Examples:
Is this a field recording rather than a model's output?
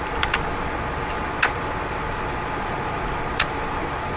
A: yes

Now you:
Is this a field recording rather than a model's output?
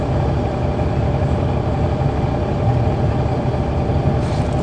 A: yes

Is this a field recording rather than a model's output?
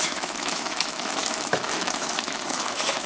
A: no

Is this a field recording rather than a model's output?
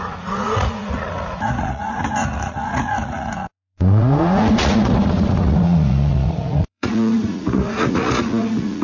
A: no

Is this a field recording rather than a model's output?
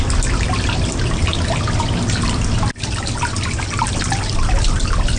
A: yes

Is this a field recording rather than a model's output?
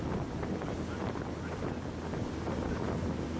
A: yes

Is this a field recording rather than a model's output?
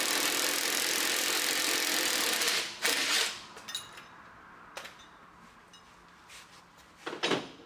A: yes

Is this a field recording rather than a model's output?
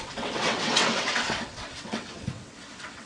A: no